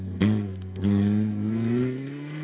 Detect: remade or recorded remade